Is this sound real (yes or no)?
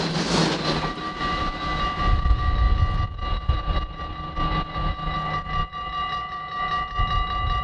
yes